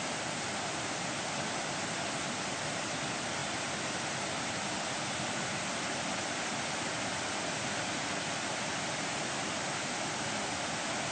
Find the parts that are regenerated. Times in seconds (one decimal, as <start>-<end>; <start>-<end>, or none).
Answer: none